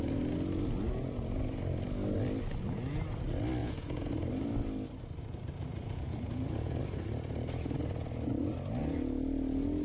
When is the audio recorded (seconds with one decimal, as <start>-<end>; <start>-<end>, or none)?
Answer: 0.0-3.6; 4.1-5.7; 6.8-9.8